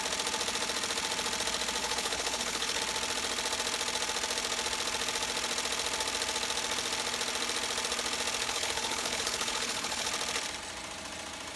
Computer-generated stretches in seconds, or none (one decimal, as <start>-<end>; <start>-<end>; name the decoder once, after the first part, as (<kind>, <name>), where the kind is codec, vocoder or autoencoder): 1.8-2.8 (codec, HILCodec); 8.4-10.1